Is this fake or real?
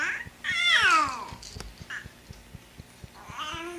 real